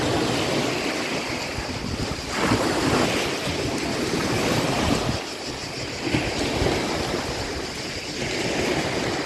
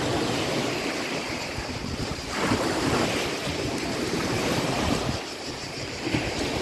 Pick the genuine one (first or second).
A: first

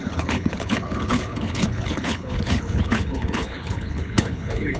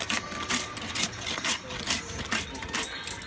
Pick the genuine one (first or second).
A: second